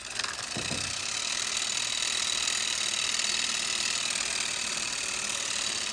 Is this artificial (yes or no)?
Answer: no